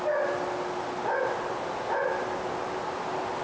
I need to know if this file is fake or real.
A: real